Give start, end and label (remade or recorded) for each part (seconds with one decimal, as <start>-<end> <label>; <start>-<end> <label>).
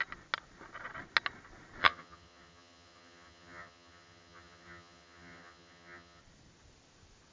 0.0-1.8 recorded; 1.8-6.2 remade; 6.2-7.3 recorded